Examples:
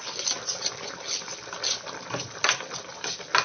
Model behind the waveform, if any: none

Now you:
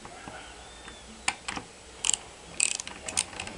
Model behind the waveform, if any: none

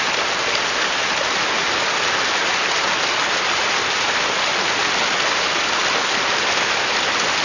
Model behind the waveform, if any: none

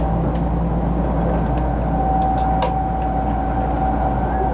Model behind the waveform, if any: none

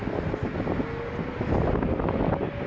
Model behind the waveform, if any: none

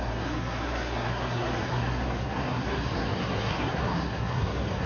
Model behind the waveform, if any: codec, SNAC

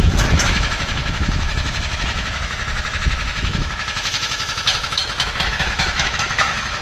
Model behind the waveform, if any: autoencoder, DAC-VAE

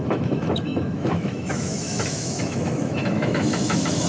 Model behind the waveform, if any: autoencoder, DAC-VAE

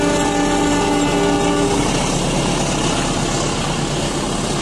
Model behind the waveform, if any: none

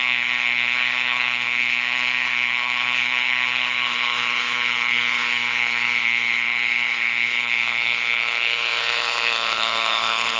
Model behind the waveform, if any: codec, HILCodec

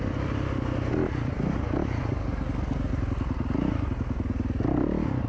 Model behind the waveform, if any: none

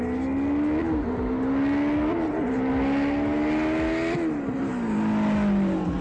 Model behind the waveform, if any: none